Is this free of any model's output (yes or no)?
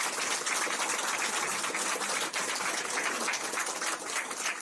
yes